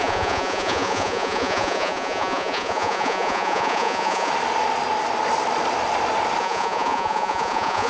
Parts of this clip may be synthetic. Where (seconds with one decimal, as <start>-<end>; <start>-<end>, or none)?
0.0-4.3; 6.4-7.9